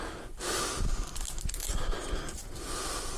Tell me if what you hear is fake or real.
real